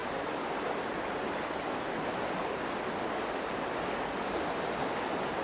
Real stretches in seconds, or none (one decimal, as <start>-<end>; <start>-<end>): 0.0-5.4